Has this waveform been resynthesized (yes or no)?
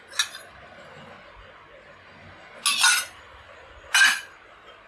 no